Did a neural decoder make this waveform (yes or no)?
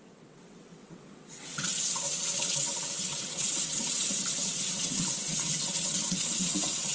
yes